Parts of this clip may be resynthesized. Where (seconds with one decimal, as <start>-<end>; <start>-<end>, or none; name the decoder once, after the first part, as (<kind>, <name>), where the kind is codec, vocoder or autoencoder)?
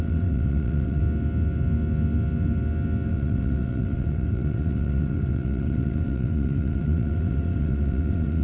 0.0-1.0 (vocoder, WaveNeXt); 3.1-8.4